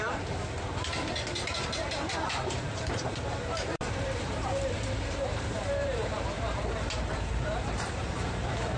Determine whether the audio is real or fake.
fake